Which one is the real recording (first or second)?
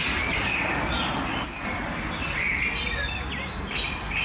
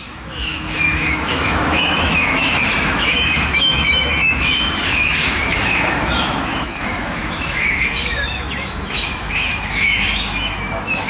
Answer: first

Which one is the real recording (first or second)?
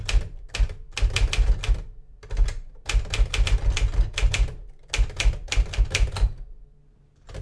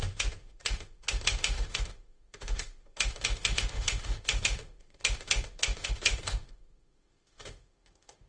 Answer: first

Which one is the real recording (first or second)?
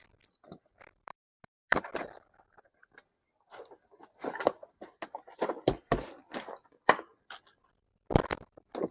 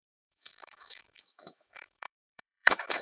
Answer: first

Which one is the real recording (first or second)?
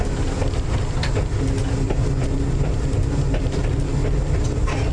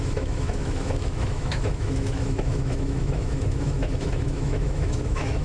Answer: first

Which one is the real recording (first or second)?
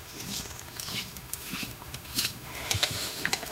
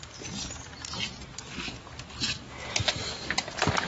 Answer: second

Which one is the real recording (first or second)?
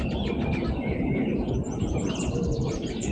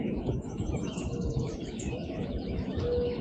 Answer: first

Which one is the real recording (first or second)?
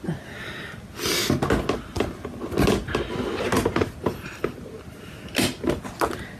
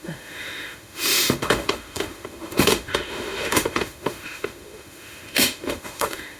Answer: first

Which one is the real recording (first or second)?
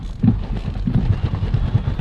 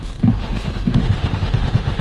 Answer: first